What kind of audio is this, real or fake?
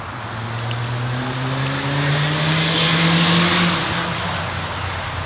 real